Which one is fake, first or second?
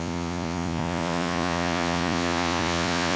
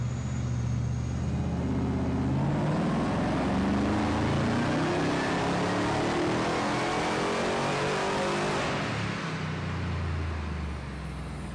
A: first